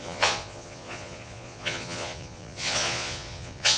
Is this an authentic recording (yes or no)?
no